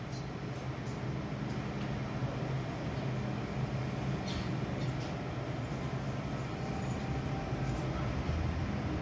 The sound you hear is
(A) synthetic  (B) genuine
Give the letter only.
B